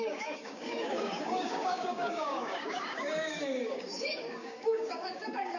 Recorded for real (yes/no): no